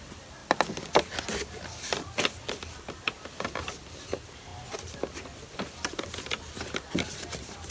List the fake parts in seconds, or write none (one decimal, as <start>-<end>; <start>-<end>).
0.0-0.4; 2.4-7.7